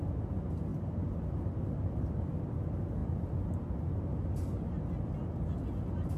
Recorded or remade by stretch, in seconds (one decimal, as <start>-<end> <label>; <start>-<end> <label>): 0.0-6.2 recorded